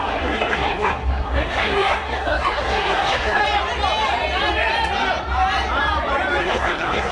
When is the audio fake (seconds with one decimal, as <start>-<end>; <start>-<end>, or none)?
0.0-3.4; 6.4-7.1